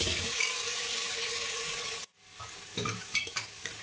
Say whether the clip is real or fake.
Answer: fake